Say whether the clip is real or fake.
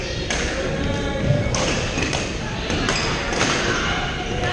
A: real